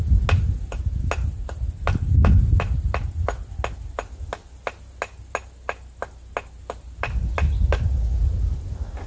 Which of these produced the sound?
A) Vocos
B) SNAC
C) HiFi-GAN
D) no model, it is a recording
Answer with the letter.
D